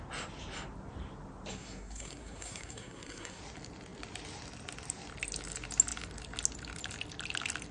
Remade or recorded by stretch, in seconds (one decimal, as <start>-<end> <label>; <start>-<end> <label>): 0.0-1.5 recorded; 1.5-3.4 remade; 3.4-7.7 recorded